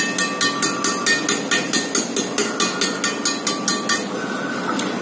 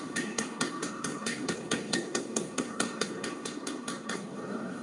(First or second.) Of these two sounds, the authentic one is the first